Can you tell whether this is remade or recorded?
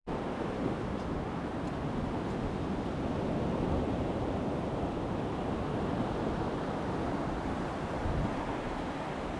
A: recorded